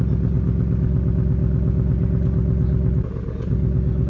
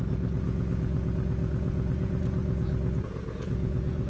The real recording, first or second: first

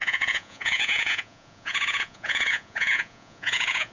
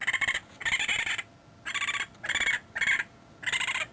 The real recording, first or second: second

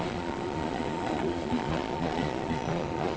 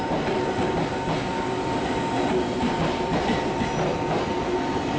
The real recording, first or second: second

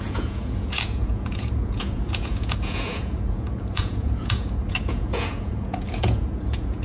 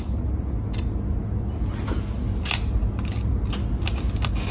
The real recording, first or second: second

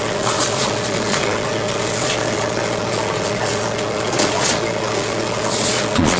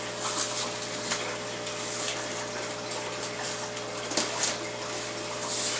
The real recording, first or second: second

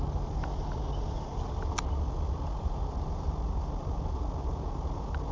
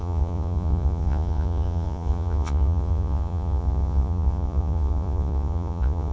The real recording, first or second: first